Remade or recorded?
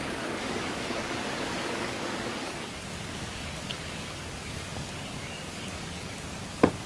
remade